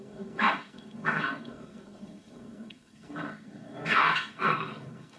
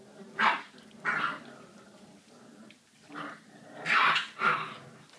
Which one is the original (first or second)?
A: second